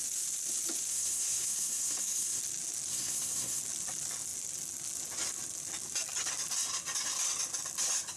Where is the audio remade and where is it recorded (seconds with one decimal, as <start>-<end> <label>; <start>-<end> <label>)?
0.0-0.9 recorded; 0.9-2.4 remade; 2.4-2.9 recorded; 2.9-3.6 remade; 3.6-8.2 recorded